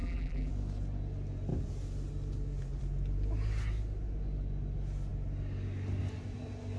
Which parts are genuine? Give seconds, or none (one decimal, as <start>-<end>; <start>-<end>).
0.5-6.8

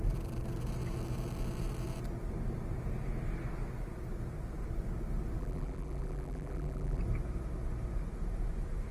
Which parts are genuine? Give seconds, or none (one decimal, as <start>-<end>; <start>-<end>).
0.0-5.4; 7.0-8.9

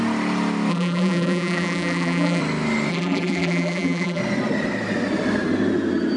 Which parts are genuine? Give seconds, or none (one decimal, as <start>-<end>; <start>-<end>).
0.0-0.7; 2.4-2.9; 4.2-6.2